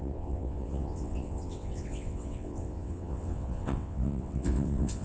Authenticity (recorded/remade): remade